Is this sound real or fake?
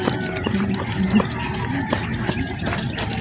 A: fake